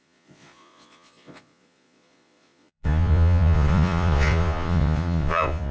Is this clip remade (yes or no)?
yes